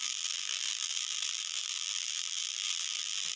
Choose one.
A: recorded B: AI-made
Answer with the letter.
B